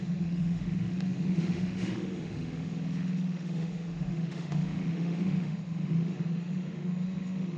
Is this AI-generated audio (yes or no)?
yes